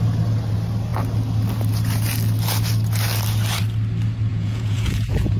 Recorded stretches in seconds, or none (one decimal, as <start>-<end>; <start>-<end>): 0.0-4.3